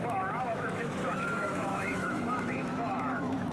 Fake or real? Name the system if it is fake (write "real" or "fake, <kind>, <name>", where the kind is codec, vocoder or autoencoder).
fake, autoencoder, DAC-VAE